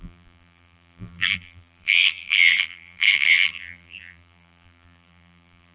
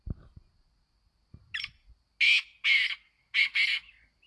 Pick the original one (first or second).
second